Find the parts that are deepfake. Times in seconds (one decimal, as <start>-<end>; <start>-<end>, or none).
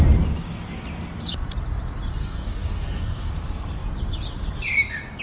2.2-3.3